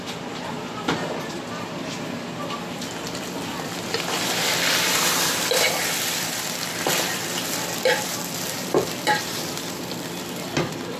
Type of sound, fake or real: fake